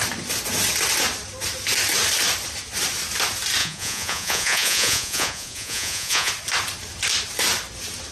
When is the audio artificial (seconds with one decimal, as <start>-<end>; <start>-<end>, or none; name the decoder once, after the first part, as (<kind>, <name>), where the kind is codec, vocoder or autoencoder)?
3.6-6.3 (vocoder, Vocos)